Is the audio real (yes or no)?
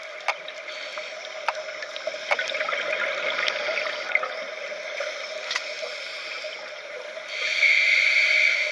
yes